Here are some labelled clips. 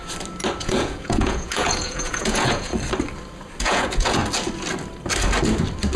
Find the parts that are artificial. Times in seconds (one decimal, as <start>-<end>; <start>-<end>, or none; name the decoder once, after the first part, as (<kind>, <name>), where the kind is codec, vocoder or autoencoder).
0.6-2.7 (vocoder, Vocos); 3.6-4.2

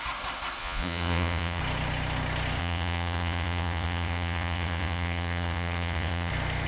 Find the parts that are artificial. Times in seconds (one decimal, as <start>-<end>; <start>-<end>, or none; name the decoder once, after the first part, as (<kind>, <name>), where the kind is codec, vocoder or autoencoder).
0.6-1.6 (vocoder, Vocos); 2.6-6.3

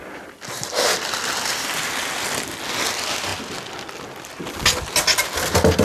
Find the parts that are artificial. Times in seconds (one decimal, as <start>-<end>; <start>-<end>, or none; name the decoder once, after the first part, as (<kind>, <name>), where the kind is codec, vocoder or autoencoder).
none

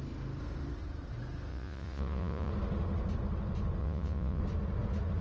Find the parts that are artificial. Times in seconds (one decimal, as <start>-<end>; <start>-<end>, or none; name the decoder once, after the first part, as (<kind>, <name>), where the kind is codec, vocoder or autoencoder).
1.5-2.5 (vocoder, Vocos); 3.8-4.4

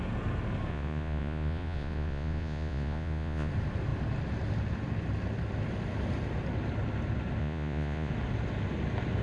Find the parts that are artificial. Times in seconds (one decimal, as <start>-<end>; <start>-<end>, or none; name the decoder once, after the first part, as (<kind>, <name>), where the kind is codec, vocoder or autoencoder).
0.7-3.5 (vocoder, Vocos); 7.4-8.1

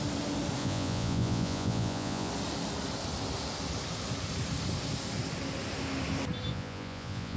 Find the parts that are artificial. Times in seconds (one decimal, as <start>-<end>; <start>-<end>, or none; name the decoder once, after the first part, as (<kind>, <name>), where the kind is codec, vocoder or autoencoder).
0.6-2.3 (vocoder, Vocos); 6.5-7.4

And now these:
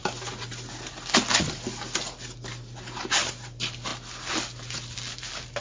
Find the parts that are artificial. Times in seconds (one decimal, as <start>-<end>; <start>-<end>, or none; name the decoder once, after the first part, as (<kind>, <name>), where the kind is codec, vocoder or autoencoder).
none